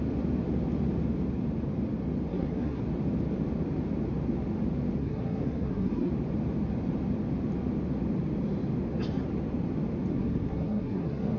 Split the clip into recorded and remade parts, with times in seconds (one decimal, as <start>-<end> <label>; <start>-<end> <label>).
0.0-2.3 recorded; 2.3-2.8 remade; 2.8-5.0 recorded; 5.0-6.1 remade; 6.1-10.1 recorded; 10.1-11.4 remade